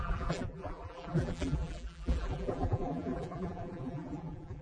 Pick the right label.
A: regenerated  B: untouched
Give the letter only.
A